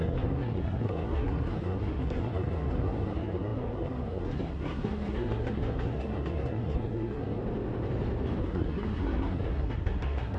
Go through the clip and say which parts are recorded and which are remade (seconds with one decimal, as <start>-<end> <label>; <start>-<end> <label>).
0.0-7.4 remade; 7.4-8.4 recorded; 8.4-10.4 remade